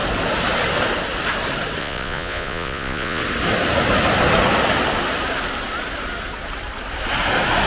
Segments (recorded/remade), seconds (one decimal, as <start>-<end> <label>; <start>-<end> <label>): 0.0-1.8 recorded; 1.8-3.2 remade; 3.2-7.7 recorded